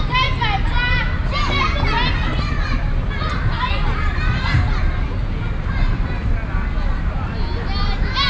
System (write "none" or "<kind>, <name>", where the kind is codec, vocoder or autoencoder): none